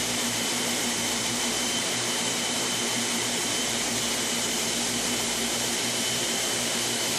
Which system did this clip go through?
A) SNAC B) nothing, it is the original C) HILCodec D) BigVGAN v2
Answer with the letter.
D